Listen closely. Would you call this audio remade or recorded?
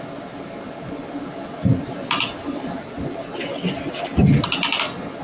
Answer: recorded